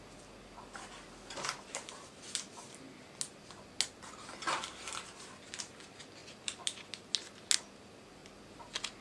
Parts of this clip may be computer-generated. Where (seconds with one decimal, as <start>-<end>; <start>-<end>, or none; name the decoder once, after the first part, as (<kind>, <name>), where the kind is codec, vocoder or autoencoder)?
6.2-7.1 (vocoder, BigVGAN v2); 8.2-9.0